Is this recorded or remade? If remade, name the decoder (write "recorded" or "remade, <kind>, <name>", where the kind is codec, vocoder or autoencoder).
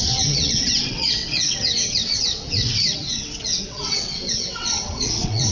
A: remade, vocoder, WaveNeXt